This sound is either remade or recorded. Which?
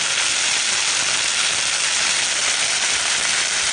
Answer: recorded